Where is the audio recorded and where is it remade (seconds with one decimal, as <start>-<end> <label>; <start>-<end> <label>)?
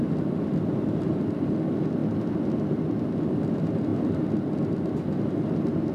0.0-5.9 recorded